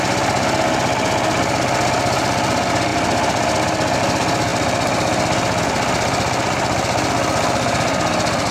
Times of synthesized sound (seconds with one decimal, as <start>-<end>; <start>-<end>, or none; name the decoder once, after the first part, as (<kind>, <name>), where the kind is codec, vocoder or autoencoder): none